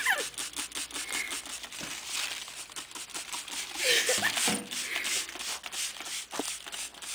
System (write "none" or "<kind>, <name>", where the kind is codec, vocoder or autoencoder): none